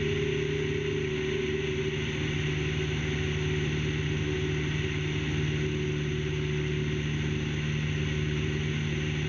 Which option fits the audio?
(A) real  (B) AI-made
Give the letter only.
A